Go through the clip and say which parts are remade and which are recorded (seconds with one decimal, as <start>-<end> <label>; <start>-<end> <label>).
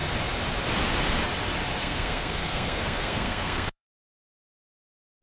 0.0-1.8 recorded; 1.8-4.0 remade; 4.0-5.2 recorded